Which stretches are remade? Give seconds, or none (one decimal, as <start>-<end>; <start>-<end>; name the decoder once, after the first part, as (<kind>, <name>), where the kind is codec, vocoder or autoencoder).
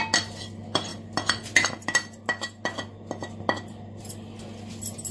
none